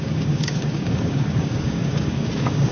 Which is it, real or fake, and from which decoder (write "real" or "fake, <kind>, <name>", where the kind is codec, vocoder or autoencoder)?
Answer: fake, codec, DAC